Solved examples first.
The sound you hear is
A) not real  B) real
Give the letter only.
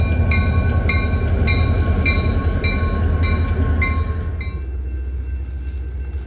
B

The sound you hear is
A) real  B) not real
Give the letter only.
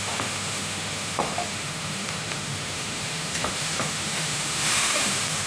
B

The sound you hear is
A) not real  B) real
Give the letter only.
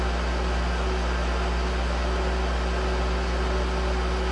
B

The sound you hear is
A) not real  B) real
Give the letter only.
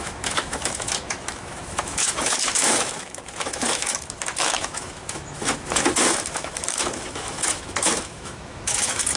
A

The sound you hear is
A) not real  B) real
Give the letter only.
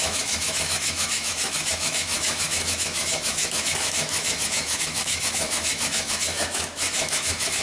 A